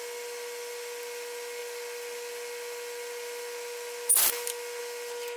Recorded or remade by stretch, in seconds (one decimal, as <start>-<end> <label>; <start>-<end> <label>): 0.0-5.4 recorded